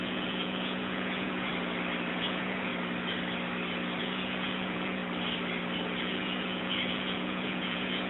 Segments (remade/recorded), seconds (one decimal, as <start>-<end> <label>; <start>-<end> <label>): 0.0-1.5 remade; 1.5-2.1 recorded; 2.1-2.7 remade; 2.7-4.0 recorded; 4.0-5.0 remade; 5.0-6.0 recorded; 6.0-8.1 remade